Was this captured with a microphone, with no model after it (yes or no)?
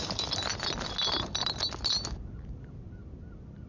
yes